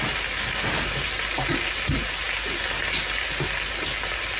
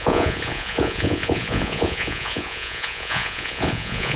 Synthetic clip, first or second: second